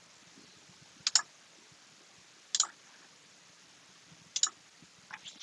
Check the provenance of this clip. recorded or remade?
recorded